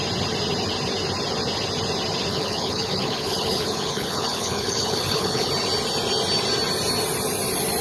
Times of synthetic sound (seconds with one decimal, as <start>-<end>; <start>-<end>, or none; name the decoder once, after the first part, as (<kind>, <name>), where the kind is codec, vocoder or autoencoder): 2.3-5.5 (codec, HILCodec)